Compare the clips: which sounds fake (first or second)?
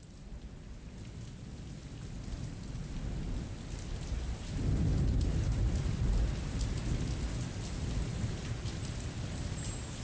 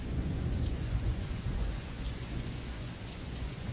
second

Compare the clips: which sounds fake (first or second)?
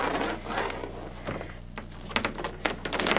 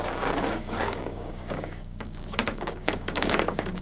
second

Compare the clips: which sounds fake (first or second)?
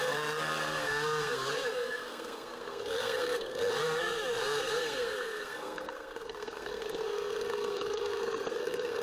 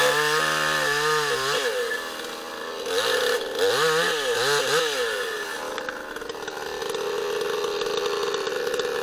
first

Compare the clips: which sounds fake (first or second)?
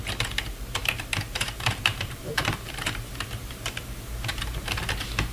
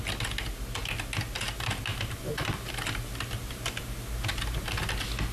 first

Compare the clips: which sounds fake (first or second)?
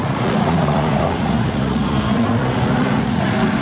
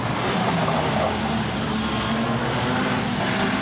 first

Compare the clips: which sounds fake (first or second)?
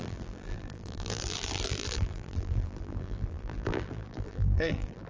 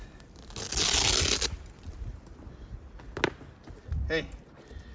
first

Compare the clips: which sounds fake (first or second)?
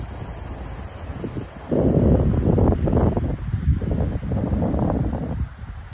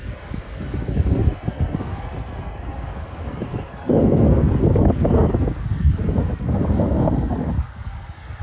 second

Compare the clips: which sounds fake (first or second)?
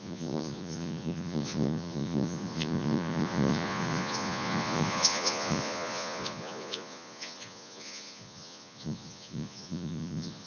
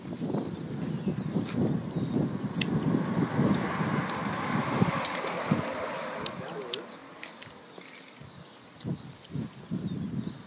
first